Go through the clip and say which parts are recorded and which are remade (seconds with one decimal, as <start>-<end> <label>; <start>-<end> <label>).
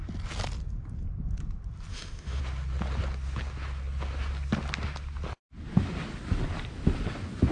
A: 0.0-1.9 recorded; 1.9-2.4 remade; 2.4-7.5 recorded